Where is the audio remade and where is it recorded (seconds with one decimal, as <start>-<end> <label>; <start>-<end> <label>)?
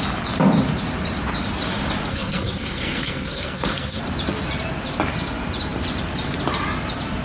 0.0-2.1 recorded; 2.1-4.0 remade; 4.0-7.2 recorded